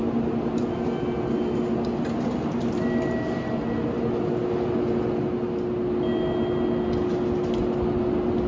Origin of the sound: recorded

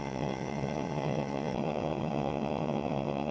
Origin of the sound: remade